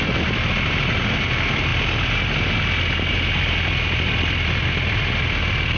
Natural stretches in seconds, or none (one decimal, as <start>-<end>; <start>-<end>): 0.0-5.8